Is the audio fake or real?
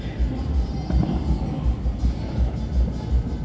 real